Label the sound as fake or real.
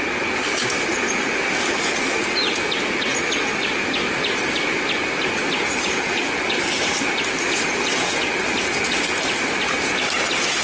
real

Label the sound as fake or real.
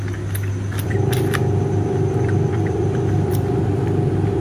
fake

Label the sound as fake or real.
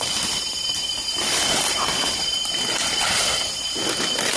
real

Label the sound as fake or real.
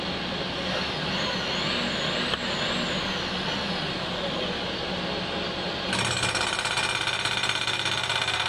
real